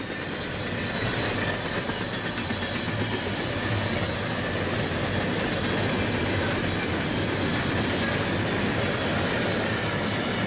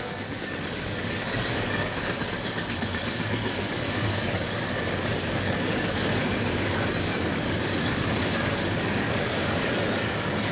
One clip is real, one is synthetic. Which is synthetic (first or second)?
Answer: second